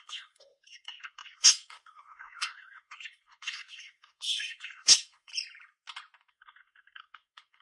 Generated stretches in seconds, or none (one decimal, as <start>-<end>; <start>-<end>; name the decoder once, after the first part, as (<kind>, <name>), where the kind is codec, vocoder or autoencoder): 0.0-5.3 (codec, SNAC); 6.3-7.6